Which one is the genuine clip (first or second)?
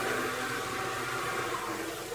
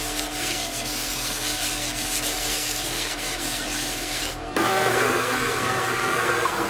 first